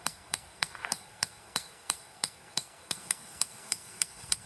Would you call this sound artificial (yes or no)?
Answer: yes